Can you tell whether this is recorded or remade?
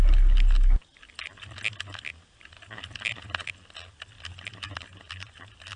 recorded